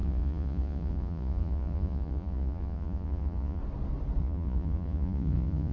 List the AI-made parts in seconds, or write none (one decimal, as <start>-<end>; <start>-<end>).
0.0-3.6; 4.2-5.7

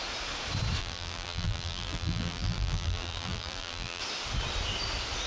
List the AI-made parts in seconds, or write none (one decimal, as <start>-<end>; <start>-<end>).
0.8-4.0